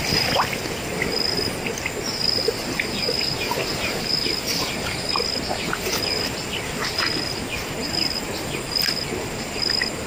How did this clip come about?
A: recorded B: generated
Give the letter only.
A